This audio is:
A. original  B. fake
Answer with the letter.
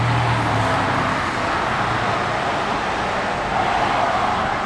A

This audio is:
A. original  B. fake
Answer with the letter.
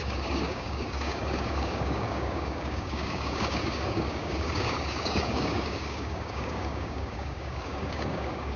B